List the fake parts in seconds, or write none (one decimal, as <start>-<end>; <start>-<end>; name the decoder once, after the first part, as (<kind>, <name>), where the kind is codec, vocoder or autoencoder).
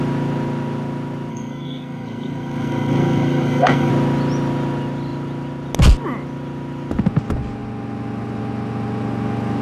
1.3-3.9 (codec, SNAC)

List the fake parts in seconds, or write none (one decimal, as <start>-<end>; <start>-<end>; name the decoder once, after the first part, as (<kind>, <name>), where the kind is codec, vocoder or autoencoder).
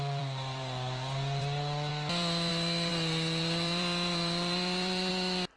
0.0-5.6 (vocoder, BigVGAN v2)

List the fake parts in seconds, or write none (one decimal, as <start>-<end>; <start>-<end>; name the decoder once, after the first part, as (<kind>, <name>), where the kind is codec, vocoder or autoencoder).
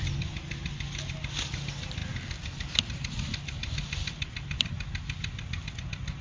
none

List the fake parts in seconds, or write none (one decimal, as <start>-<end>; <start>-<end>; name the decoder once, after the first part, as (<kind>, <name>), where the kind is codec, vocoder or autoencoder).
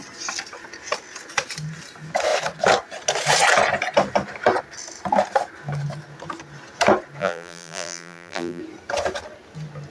7.2-8.6 (vocoder, BigVGAN v2)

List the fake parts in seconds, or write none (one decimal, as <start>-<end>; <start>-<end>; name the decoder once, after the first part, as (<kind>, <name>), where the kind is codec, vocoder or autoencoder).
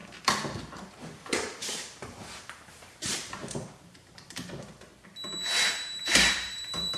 0.0-4.9 (vocoder, BigVGAN v2); 5.7-7.0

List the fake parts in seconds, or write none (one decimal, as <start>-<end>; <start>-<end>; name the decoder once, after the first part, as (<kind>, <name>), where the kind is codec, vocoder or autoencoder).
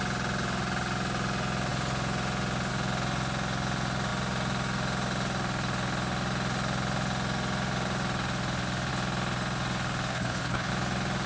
10.1-10.7 (codec, HILCodec)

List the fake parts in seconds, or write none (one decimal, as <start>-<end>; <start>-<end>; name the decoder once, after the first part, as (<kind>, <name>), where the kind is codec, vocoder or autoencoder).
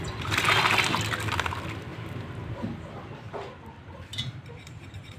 1.9-2.5 (vocoder, BigVGAN v2); 4.1-5.2